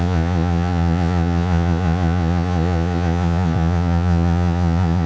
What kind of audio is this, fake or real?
fake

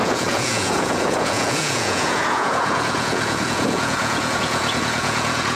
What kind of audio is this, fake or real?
fake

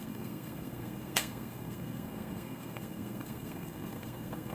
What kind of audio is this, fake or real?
fake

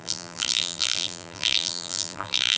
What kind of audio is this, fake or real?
fake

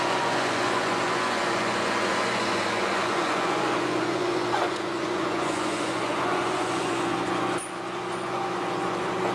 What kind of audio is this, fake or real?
fake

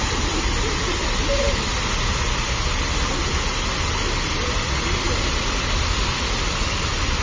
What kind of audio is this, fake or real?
real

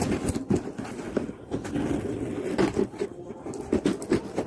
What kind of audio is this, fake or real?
real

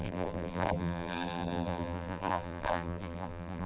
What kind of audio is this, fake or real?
fake